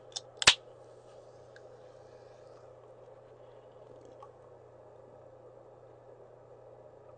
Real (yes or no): yes